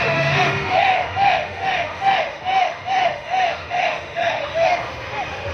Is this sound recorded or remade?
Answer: remade